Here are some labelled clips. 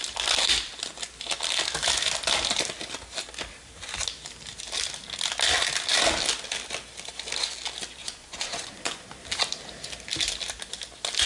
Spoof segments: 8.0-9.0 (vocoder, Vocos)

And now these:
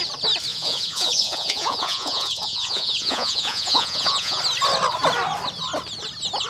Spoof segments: 0.5-4.4 (vocoder, Vocos)

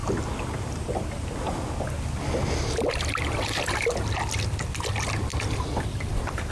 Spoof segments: none

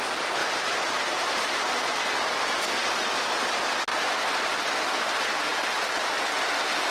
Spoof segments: 0.4-2.0 (vocoder, BigVGAN v2); 3.9-4.7